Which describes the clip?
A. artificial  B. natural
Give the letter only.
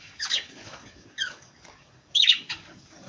A